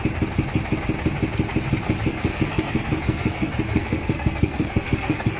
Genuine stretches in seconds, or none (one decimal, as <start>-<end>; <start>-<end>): 0.0-2.1